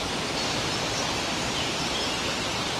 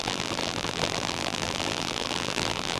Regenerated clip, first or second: second